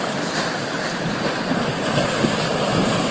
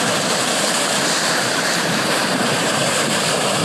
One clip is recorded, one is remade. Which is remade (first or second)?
second